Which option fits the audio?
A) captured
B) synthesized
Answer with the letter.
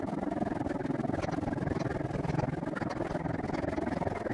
A